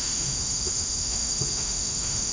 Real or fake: fake